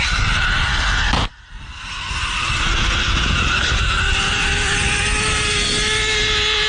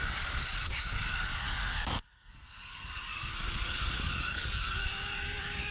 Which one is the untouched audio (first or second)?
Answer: first